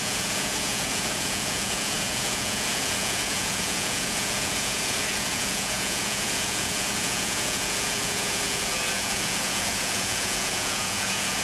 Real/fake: fake